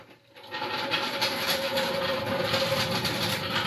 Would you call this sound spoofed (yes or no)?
no